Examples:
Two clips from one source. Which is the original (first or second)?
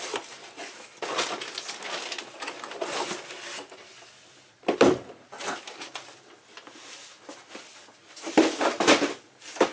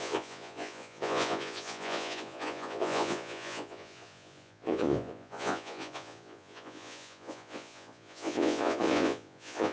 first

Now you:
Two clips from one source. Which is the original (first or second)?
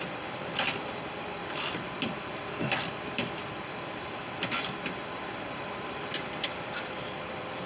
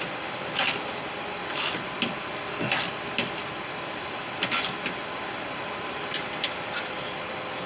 second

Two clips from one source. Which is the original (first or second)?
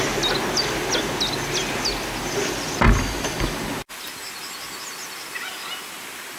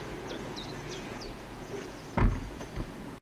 first